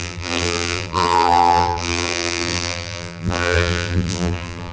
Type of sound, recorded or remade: remade